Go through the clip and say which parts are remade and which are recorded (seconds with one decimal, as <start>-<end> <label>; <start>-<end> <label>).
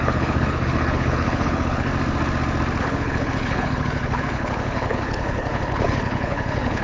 0.0-1.9 remade; 1.9-2.8 recorded; 2.8-6.8 remade